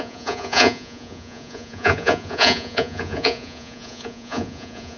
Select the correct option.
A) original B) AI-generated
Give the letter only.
B